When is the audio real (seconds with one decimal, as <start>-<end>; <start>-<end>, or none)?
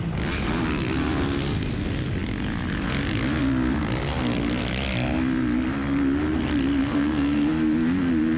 0.0-6.8; 7.5-8.4